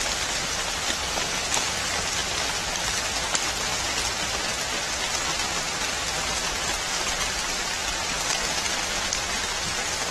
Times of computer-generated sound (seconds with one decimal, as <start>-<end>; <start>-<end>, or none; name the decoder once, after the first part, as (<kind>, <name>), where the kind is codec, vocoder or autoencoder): 1.0-1.6 (codec, DAC)